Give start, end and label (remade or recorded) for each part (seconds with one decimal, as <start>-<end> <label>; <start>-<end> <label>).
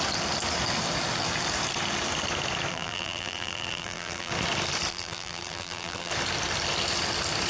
0.0-2.7 recorded; 2.7-4.3 remade; 4.3-4.9 recorded; 4.9-6.1 remade; 6.1-7.5 recorded